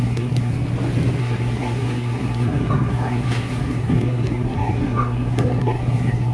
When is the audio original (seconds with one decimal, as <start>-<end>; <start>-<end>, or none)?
0.5-1.2